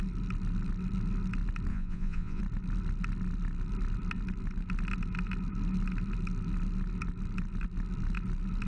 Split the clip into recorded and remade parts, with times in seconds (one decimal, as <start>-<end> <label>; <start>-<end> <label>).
0.0-1.7 recorded; 1.7-2.4 remade; 2.4-8.7 recorded